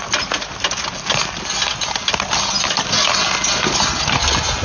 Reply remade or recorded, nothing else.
recorded